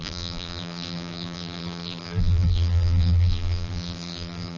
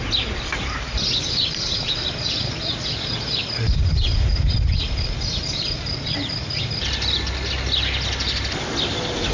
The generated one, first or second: first